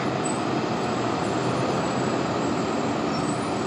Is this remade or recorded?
recorded